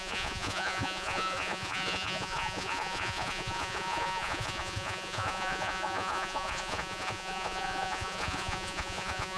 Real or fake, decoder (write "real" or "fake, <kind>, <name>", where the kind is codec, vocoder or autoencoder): fake, vocoder, Vocos